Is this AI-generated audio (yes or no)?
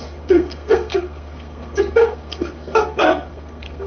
yes